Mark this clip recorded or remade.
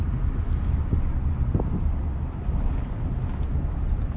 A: recorded